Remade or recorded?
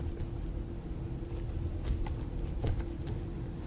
recorded